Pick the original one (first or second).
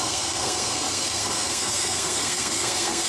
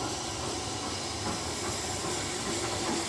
second